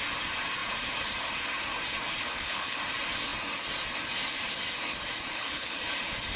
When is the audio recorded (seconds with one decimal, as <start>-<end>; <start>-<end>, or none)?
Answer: 0.0-2.3; 2.8-5.3; 5.8-6.4